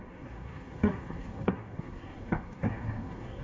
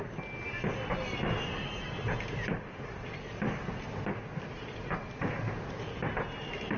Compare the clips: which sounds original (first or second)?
second